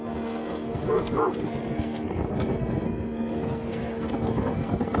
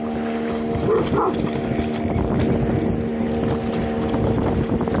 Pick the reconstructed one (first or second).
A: first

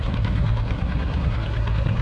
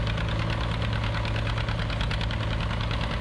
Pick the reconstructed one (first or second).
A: first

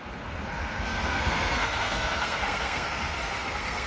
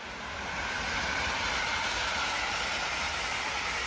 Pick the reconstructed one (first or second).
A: first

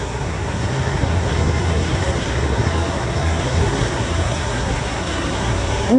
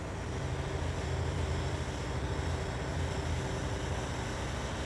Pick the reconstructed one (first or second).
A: first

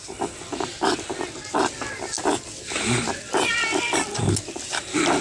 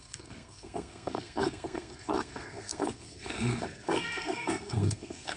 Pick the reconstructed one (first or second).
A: second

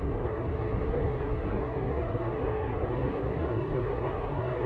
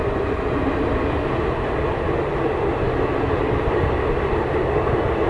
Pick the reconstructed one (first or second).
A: first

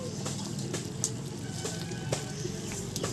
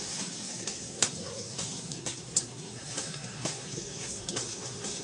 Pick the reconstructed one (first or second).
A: second